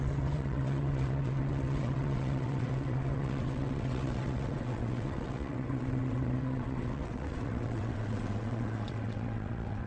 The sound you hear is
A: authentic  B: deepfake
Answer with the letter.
B